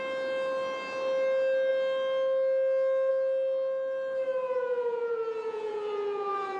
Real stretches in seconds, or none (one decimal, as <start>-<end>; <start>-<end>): 0.0-4.4